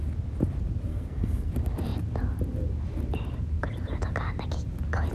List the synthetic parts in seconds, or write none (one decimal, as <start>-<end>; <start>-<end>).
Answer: 0.9-1.5